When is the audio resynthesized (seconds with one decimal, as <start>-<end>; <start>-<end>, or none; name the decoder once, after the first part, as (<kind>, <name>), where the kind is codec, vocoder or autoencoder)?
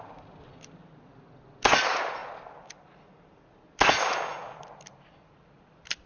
none